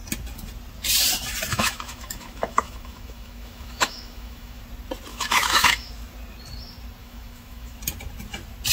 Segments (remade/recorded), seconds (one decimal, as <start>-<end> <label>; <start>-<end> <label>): 0.0-1.5 recorded; 1.5-4.6 remade; 4.6-5.1 recorded; 5.1-5.9 remade; 5.9-7.0 recorded; 7.0-7.8 remade; 7.8-8.7 recorded